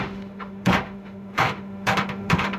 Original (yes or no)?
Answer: no